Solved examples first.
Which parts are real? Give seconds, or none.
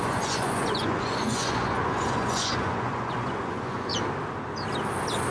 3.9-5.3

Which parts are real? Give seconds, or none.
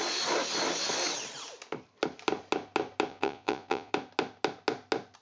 0.0-3.1; 3.9-5.2